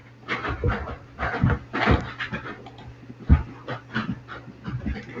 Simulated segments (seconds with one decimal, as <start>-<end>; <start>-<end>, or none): 0.0-3.1; 4.0-4.8